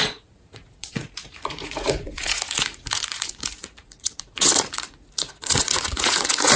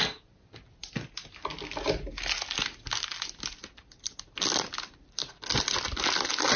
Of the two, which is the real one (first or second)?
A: second